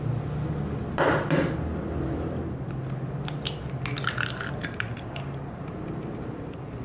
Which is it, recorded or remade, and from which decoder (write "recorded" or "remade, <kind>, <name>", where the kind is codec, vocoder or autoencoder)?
recorded